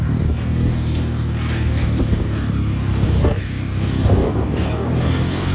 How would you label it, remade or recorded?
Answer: remade